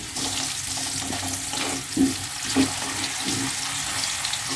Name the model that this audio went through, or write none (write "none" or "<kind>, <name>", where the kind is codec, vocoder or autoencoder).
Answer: none